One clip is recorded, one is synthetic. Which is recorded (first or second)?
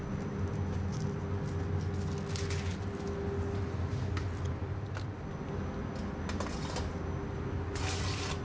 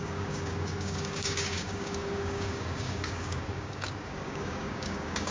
first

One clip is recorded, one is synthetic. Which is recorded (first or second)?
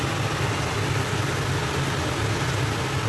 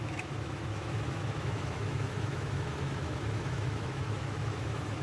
first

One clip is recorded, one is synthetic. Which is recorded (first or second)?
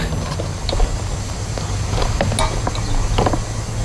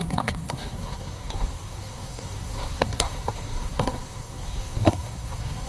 first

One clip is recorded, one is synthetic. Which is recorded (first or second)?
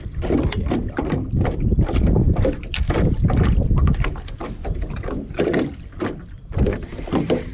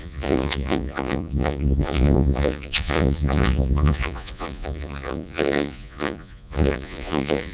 first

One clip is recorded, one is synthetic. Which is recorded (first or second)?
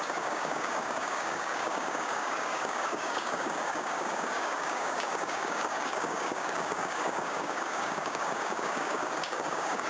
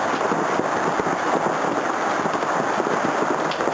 second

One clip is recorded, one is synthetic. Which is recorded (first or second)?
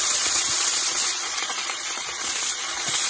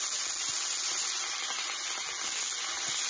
second